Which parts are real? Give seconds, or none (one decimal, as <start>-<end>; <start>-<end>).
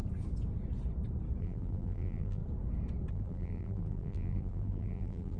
0.0-1.4; 2.4-3.1